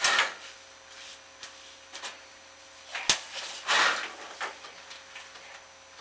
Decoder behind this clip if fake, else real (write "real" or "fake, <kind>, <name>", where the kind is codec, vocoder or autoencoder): real